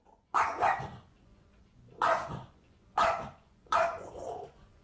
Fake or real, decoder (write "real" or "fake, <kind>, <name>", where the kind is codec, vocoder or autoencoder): fake, vocoder, Vocos